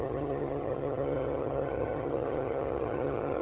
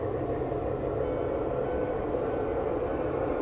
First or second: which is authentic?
second